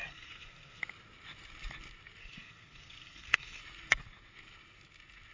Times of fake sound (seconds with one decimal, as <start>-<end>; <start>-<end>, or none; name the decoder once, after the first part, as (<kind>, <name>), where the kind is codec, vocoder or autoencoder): 0.0-0.8 (codec, SNAC); 2.2-3.6